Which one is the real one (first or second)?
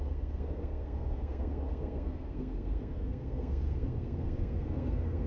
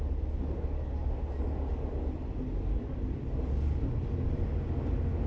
second